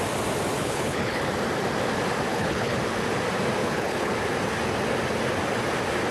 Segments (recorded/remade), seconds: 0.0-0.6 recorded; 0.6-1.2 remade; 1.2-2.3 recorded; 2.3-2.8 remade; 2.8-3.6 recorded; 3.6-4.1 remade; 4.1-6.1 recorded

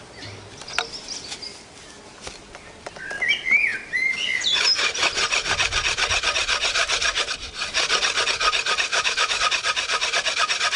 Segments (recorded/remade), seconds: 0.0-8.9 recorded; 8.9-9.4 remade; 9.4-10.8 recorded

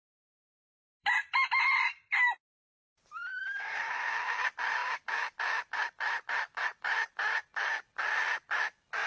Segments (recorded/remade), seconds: 0.0-1.0 recorded; 1.0-2.6 remade; 2.6-3.3 recorded; 3.3-4.0 remade; 4.0-4.8 recorded; 4.8-8.2 remade; 8.2-9.1 recorded

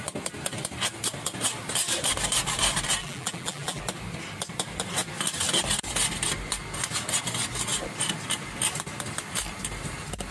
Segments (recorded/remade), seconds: 0.0-3.0 recorded; 3.0-3.8 remade; 3.8-10.3 recorded

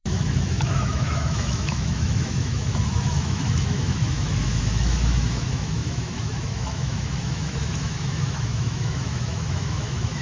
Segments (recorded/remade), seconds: 0.0-10.2 remade

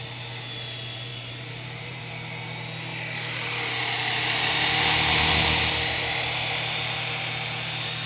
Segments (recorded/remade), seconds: 0.0-1.1 recorded; 1.1-2.0 remade; 2.0-8.1 recorded

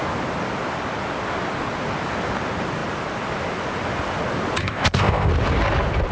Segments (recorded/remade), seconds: 0.0-4.6 recorded; 4.6-5.3 remade; 5.3-6.1 recorded